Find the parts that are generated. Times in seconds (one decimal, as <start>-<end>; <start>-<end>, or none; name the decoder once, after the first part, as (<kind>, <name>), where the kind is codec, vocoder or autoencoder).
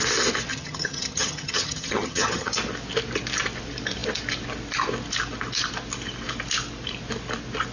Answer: 0.5-2.5 (vocoder, HiFi-GAN)